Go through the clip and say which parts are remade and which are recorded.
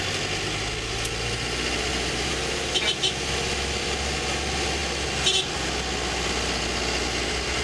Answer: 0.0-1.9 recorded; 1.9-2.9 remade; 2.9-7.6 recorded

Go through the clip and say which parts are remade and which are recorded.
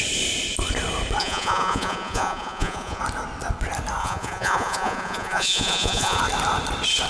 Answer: 0.0-1.2 recorded; 1.2-3.0 remade; 3.0-4.0 recorded; 4.0-6.2 remade; 6.2-7.1 recorded